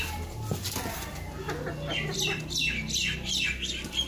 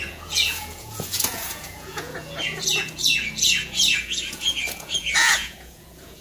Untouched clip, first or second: first